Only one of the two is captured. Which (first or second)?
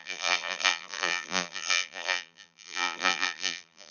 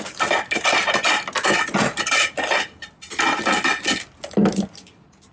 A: second